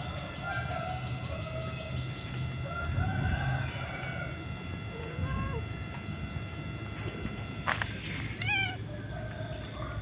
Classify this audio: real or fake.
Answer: real